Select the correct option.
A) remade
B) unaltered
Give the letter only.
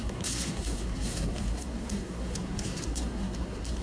A